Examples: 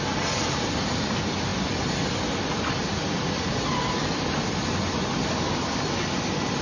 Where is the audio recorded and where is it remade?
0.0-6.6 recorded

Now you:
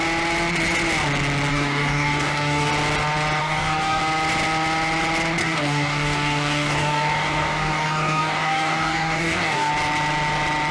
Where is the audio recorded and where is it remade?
0.0-1.5 recorded; 1.5-2.7 remade; 2.7-3.4 recorded; 3.4-4.0 remade; 4.0-5.4 recorded; 5.4-9.7 remade; 9.7-10.7 recorded

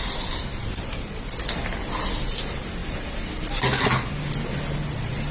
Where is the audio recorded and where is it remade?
0.0-5.3 recorded